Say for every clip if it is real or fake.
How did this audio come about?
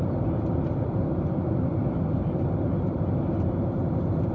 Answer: real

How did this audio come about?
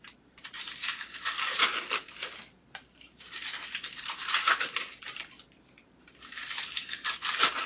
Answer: fake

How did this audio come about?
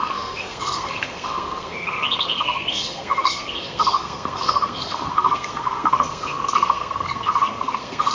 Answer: fake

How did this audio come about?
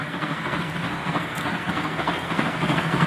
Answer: fake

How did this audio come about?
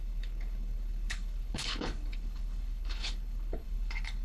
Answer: fake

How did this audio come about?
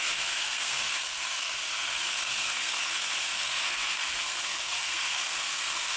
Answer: fake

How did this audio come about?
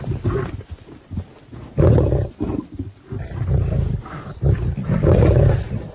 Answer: real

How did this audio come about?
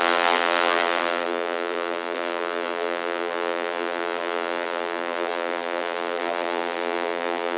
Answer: fake